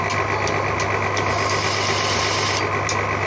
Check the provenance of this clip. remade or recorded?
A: recorded